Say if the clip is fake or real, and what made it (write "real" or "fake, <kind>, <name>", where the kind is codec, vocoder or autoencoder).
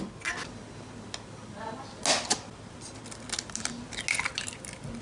real